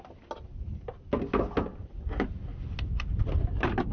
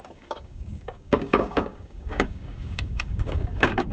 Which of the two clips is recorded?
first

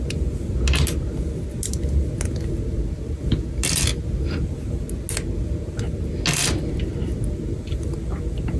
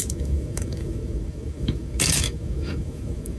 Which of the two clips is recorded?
first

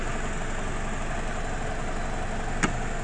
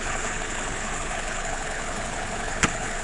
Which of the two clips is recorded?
first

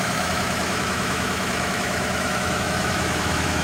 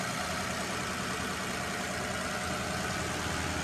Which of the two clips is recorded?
second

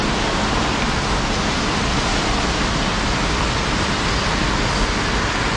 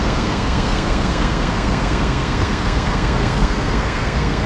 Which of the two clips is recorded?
first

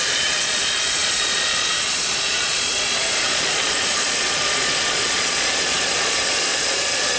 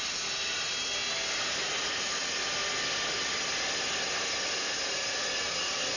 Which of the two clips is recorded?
second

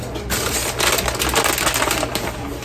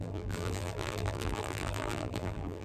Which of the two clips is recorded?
first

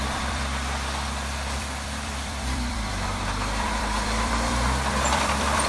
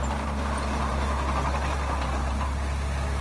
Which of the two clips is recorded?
second